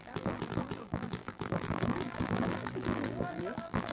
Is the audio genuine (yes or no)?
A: no